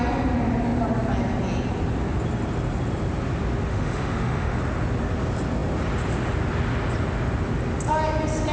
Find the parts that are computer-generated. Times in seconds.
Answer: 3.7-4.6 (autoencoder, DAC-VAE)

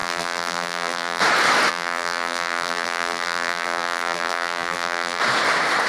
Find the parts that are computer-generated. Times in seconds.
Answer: 0.0-1.2 (vocoder, BigVGAN v2); 1.7-5.2

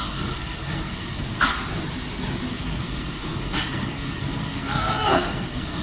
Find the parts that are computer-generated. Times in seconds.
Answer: 0.0-1.5 (codec, SNAC); 2.5-5.8